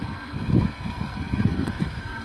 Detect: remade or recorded remade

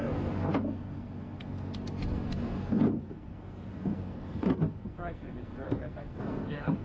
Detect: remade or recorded remade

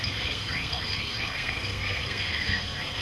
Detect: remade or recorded remade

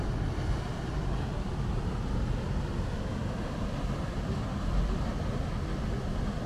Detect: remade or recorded recorded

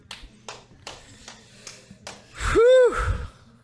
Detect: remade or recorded recorded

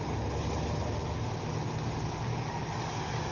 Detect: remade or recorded recorded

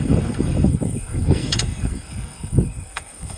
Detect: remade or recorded remade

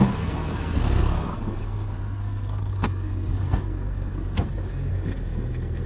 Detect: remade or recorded remade